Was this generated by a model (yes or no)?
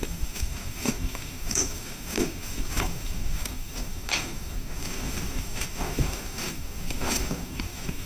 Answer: yes